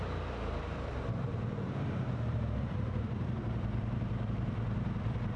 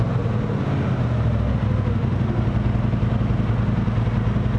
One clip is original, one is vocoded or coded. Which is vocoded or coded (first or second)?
first